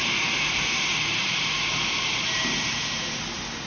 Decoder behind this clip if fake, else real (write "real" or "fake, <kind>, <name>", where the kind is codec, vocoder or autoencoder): fake, vocoder, BigVGAN v2